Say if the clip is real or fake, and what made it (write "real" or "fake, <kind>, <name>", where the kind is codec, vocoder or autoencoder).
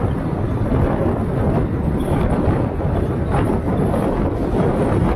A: fake, vocoder, BigVGAN v2